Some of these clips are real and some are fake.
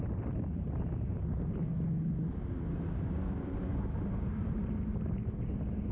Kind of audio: real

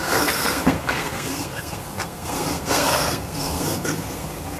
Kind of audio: fake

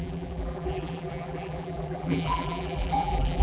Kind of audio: fake